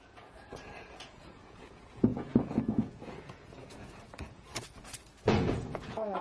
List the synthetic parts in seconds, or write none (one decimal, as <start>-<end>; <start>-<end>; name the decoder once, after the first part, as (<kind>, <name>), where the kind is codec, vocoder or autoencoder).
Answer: 0.0-6.2 (vocoder, Vocos)